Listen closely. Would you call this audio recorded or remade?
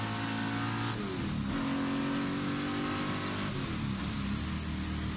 recorded